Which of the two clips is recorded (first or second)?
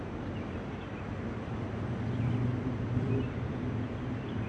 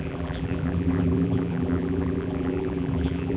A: first